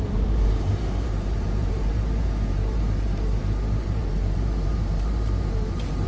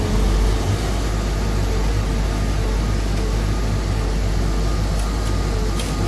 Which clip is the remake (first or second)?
first